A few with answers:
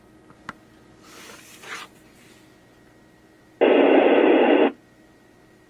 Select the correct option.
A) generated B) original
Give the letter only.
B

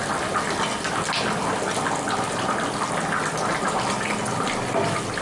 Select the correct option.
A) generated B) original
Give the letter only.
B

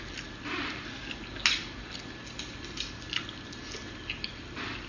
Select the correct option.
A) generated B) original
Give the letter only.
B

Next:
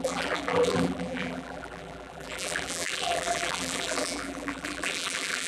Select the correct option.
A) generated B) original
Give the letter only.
A